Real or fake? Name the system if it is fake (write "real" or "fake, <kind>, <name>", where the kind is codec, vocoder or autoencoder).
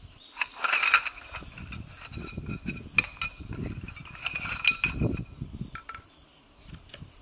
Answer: real